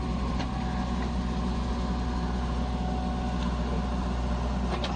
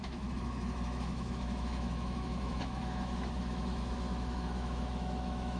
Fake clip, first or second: second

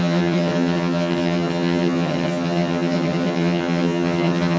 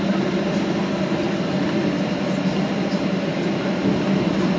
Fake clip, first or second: first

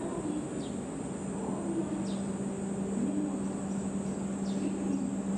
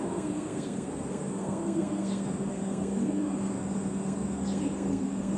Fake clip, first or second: second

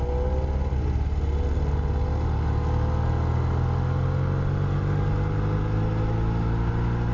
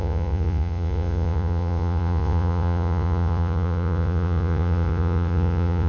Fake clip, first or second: second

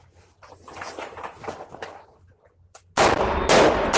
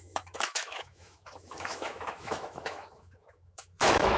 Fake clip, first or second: second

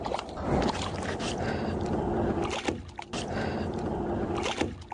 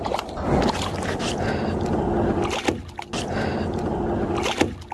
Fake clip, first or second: first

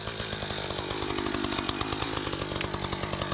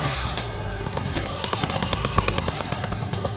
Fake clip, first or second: second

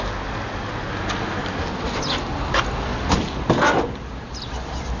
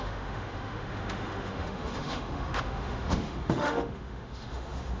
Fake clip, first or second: second